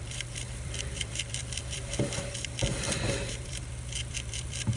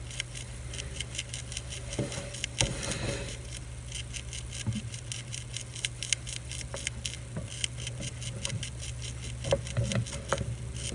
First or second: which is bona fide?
second